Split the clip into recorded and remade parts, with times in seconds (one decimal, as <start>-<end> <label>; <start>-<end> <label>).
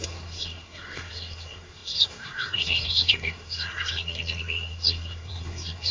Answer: 0.0-5.9 remade